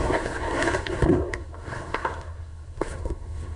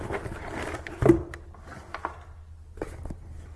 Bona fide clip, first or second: second